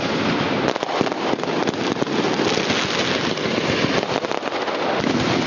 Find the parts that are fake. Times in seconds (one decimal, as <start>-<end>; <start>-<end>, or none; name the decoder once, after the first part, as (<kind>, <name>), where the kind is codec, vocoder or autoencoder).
none